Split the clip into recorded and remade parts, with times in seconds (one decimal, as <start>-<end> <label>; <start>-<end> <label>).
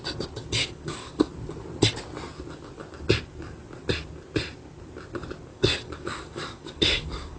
0.0-0.6 recorded; 0.6-1.3 remade; 1.3-5.5 recorded; 5.5-7.4 remade